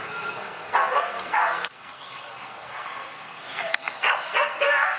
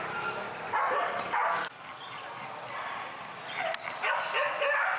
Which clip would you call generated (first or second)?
first